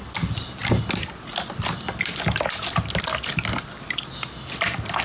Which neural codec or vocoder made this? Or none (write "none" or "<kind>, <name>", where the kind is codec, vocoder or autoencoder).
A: none